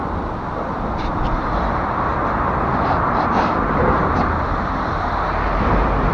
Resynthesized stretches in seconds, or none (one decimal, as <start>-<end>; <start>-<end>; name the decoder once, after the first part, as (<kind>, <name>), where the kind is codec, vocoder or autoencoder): 0.0-2.1 (vocoder, BigVGAN v2); 2.7-6.1